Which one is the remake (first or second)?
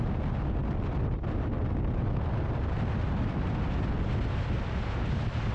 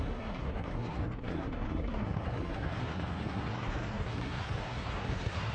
second